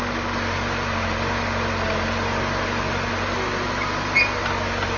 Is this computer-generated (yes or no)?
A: no